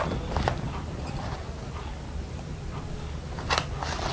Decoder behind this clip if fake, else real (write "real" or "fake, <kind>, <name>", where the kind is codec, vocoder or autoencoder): real